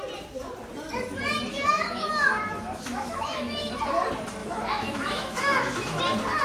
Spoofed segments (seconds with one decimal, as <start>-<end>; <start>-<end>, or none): 1.5-3.7; 4.4-6.0